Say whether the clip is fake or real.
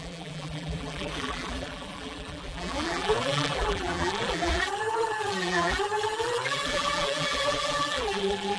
fake